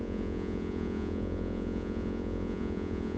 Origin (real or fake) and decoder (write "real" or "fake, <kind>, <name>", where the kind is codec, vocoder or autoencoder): fake, vocoder, Vocos